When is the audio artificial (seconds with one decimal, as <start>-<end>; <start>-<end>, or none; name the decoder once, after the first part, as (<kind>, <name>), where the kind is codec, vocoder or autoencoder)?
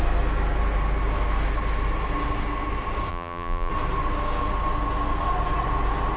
3.1-3.7 (vocoder, BigVGAN v2)